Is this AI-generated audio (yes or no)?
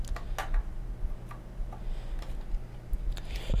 no